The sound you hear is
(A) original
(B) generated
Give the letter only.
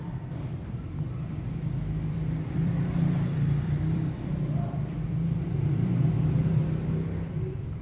B